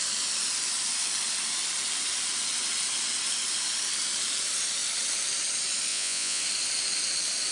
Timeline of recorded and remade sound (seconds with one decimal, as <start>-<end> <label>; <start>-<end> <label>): 0.0-5.9 recorded; 5.9-6.4 remade; 6.4-7.5 recorded